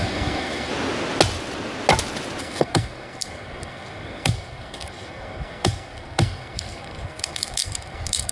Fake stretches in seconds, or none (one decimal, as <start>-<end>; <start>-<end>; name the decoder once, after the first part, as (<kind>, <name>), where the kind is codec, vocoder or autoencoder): 0.0-0.7 (codec, SNAC); 2.4-8.3